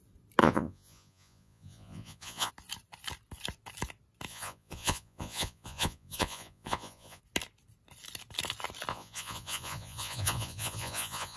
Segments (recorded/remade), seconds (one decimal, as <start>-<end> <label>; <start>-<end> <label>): 0.0-0.4 recorded; 0.4-2.5 remade; 2.5-4.3 recorded; 4.3-7.2 remade; 7.2-8.9 recorded; 8.9-11.4 remade